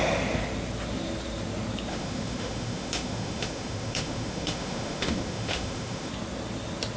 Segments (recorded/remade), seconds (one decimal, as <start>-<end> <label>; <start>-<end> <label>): 0.0-1.9 recorded; 1.9-6.1 remade; 6.1-7.0 recorded